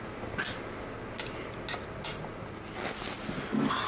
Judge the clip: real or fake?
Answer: real